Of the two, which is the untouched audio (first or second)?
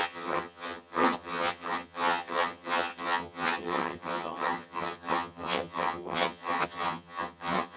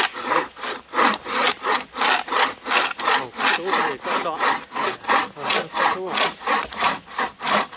second